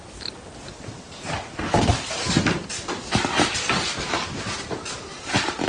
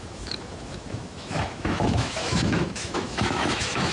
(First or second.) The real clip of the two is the first